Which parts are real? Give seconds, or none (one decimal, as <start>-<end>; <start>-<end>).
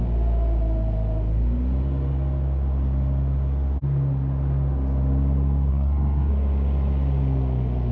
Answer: 0.0-5.7; 6.3-7.9